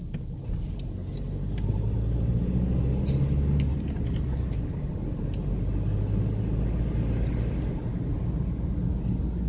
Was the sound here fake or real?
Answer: real